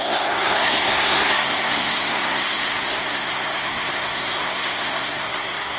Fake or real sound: fake